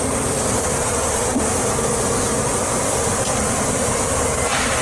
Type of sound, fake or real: real